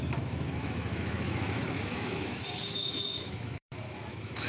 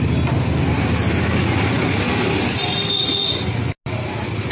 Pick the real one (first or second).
second